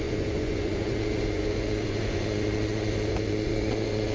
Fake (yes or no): yes